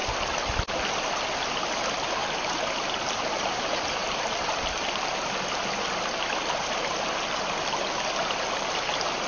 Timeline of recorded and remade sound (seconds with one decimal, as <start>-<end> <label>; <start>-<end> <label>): 0.0-9.3 recorded